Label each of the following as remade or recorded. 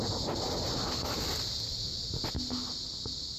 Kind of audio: recorded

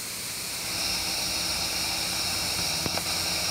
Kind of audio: recorded